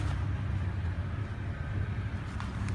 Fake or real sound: real